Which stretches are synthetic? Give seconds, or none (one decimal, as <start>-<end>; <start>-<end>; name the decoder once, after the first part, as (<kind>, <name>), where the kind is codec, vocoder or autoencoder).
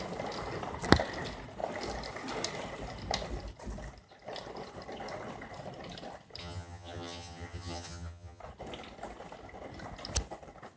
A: 6.4-8.4 (vocoder, HiFi-GAN)